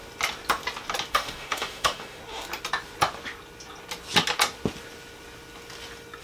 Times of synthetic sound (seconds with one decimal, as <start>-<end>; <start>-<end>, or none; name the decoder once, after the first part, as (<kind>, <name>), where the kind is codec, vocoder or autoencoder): 1.1-2.2 (autoencoder, DAC-VAE)